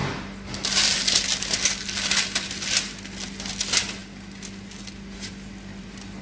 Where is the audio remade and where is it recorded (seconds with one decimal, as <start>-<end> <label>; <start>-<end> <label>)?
0.0-6.2 recorded